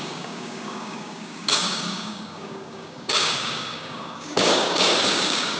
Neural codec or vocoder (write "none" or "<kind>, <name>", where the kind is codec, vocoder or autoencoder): codec, DAC